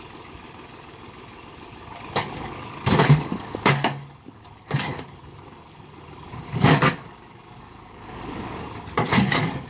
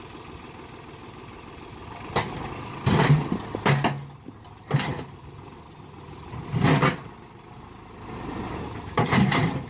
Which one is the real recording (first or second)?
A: second